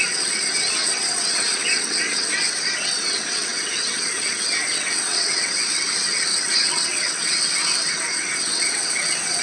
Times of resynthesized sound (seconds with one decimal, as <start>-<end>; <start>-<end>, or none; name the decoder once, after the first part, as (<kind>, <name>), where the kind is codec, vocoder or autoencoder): 0.0-9.4 (vocoder, WaveNeXt)